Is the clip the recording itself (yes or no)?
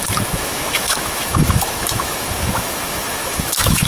no